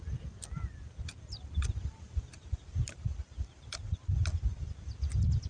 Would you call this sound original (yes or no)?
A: yes